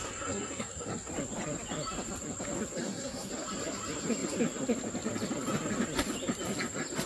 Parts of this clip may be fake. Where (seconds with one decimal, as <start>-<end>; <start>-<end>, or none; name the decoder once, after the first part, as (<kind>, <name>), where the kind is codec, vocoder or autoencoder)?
0.0-1.1 (codec, SNAC); 2.8-3.3